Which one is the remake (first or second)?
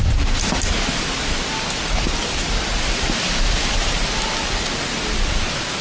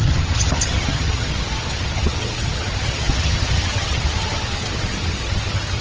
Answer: second